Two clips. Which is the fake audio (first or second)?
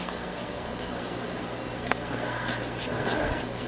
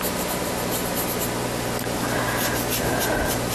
first